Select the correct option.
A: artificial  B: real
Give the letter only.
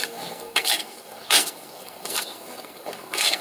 A